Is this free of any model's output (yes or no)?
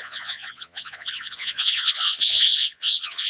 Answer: no